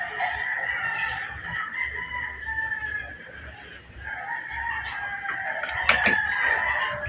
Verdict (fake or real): real